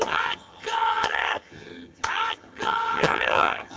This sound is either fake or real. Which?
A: fake